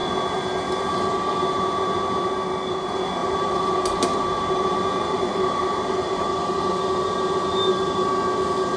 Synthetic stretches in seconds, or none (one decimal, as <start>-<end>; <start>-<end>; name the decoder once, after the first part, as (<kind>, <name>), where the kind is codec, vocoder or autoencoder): 3.2-6.6 (vocoder, BigVGAN v2)